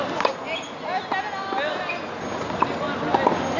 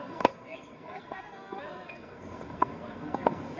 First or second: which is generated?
second